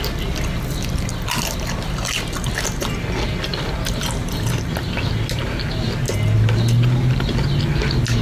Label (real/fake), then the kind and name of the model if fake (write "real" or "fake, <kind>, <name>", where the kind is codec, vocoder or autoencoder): real